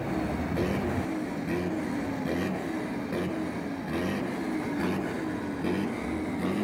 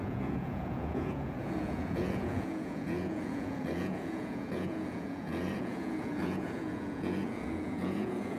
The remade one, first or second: second